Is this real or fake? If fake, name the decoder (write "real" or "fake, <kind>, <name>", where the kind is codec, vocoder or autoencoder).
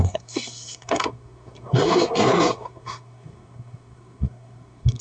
fake, codec, SNAC